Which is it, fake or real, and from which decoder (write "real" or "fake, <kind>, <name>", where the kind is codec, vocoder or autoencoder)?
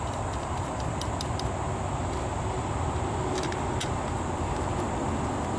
real